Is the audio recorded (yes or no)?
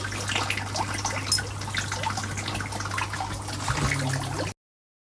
yes